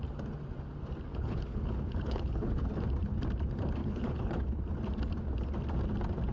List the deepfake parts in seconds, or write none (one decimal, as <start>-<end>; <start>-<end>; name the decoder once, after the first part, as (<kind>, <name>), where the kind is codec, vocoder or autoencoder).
1.1-2.7 (codec, HILCodec); 3.8-4.6